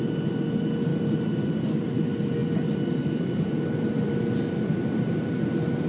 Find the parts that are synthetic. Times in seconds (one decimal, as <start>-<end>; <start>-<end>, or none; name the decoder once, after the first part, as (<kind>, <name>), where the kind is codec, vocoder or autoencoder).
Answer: none